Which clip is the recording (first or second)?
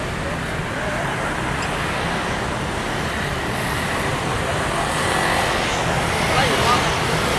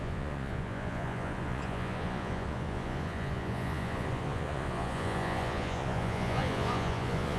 first